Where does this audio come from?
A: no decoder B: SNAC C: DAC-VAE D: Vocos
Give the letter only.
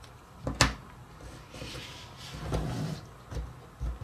A